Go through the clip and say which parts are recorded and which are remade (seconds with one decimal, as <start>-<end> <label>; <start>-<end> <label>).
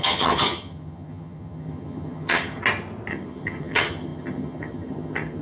0.0-2.6 remade; 2.6-3.1 recorded; 3.1-5.4 remade